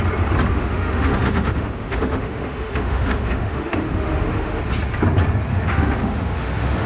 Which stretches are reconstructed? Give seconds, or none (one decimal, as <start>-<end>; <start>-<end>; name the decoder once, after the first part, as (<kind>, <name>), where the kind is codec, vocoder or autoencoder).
0.5-4.6 (autoencoder, DAC-VAE); 5.5-6.9